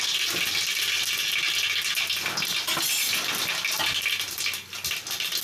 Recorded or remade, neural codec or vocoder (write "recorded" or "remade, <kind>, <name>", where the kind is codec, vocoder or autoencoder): recorded